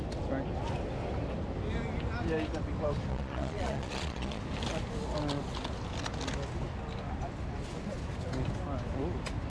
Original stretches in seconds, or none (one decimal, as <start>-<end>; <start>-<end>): 0.0-3.1; 4.4-9.5